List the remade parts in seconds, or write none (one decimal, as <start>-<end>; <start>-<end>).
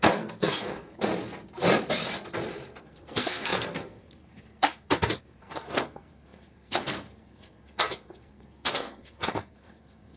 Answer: 0.0-1.1; 2.8-10.2